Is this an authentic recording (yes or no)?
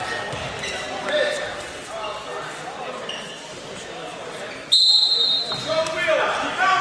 yes